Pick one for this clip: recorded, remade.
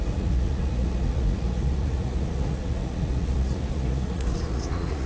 remade